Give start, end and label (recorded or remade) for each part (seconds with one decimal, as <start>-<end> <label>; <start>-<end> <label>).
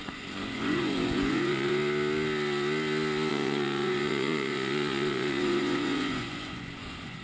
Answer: 0.0-1.8 remade; 1.8-3.3 recorded; 3.3-7.2 remade